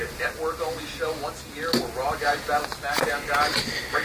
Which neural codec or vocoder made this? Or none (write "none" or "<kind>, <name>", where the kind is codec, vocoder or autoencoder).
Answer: none